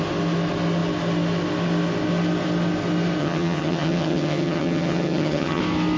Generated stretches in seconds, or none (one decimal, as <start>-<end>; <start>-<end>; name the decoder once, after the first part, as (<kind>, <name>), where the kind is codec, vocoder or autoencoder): 3.2-5.6 (vocoder, HiFi-GAN)